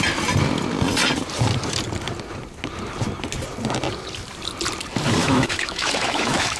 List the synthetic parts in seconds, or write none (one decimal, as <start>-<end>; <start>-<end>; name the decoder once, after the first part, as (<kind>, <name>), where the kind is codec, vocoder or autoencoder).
5.2-6.6 (autoencoder, DAC-VAE)